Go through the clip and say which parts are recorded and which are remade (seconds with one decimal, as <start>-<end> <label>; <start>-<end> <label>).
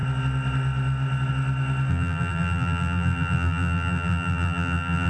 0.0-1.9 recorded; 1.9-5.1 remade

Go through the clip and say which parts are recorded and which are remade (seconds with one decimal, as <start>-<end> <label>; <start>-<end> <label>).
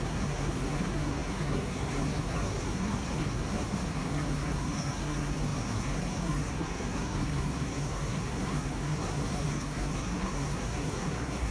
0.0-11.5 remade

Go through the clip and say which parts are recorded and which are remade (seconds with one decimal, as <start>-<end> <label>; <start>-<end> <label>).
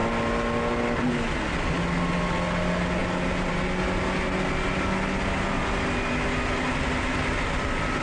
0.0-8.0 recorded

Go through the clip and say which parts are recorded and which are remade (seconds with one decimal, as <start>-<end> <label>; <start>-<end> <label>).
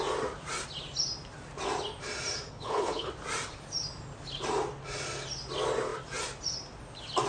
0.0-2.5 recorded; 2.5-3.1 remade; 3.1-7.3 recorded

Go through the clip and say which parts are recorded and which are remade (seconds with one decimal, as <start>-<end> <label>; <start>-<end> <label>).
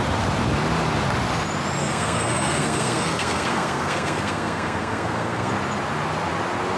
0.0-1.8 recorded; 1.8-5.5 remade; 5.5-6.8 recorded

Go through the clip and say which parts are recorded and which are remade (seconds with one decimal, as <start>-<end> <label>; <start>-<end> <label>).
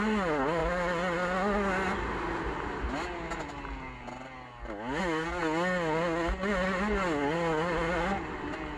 0.0-8.8 recorded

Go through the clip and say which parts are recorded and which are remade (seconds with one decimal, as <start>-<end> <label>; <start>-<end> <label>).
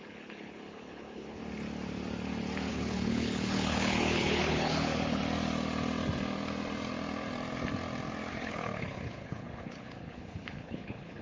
0.0-1.4 remade; 1.4-2.7 recorded; 2.7-5.2 remade; 5.2-8.3 recorded; 8.3-11.2 remade